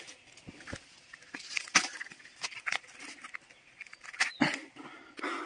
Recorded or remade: recorded